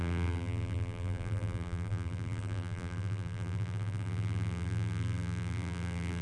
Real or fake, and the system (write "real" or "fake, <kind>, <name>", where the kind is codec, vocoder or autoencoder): fake, vocoder, BigVGAN v2